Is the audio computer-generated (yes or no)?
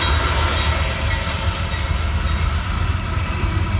no